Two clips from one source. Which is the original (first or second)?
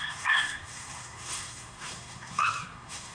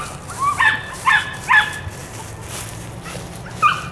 second